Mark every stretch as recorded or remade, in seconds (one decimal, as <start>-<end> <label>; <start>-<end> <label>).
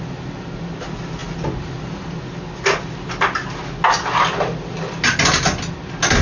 0.0-6.2 recorded